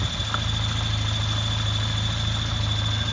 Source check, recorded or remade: recorded